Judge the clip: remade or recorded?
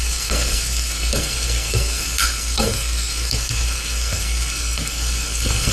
remade